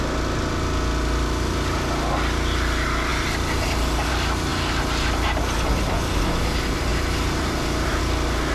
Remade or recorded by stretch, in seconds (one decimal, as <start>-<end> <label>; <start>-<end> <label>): 0.0-3.1 recorded; 3.1-4.1 remade; 4.1-6.9 recorded; 6.9-8.0 remade; 8.0-8.5 recorded